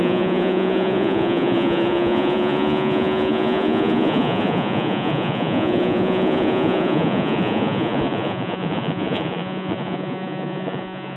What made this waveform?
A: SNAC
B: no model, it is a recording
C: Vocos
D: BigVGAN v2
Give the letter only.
C